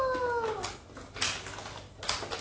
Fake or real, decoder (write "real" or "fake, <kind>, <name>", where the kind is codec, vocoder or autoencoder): real